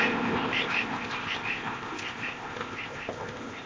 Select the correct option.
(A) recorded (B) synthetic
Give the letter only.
B